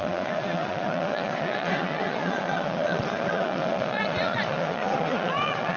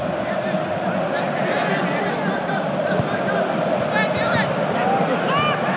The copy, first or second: first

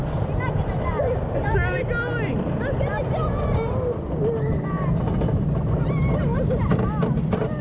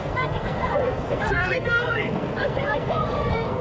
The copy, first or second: second